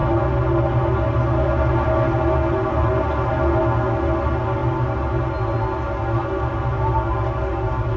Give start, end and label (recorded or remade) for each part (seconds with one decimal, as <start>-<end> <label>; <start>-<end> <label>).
0.0-8.0 recorded